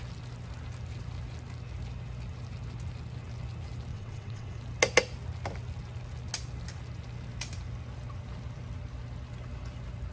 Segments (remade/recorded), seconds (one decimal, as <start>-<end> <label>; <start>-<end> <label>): 0.0-3.9 recorded; 3.9-4.6 remade; 4.6-10.1 recorded